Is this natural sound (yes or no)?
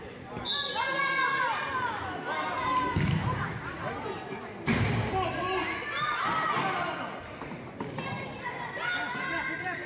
yes